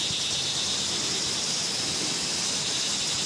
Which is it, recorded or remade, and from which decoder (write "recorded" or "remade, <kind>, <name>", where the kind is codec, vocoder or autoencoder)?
recorded